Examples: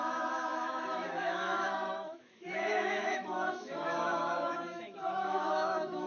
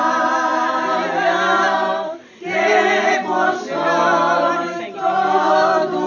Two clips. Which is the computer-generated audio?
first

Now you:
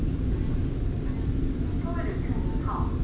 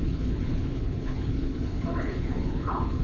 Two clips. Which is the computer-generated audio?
second